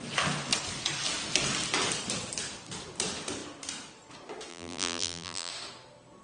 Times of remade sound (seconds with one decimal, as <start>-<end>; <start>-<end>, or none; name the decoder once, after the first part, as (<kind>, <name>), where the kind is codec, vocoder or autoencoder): 4.5-5.5 (vocoder, BigVGAN v2)